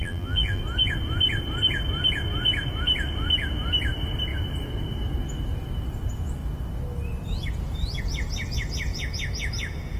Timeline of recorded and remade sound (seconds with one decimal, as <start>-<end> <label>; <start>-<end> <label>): 0.0-0.6 remade; 0.6-10.0 recorded